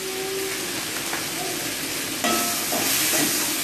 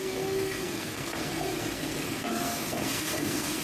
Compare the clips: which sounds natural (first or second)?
first